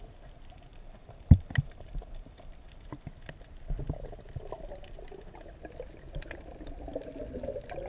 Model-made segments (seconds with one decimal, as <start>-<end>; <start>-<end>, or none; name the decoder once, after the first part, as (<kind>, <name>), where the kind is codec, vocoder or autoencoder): 0.7-2.9 (vocoder, BigVGAN v2)